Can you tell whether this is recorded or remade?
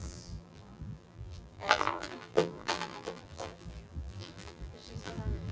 remade